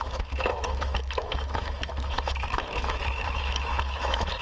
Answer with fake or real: fake